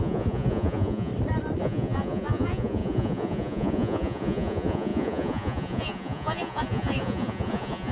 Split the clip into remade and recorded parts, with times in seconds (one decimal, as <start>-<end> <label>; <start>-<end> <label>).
0.0-1.1 remade; 1.1-1.6 recorded; 1.6-7.9 remade